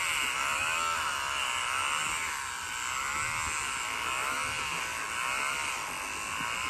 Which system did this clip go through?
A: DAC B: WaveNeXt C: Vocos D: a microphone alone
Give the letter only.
D